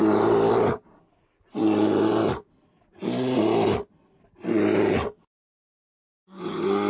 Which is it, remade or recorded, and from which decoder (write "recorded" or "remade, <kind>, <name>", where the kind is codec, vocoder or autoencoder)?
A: recorded